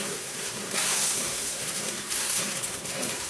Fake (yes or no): yes